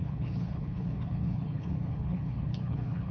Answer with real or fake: fake